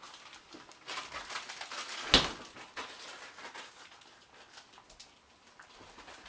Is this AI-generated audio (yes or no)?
no